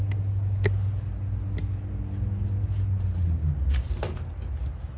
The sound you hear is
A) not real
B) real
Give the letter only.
B